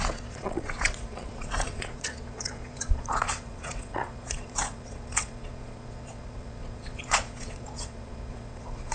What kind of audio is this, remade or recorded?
remade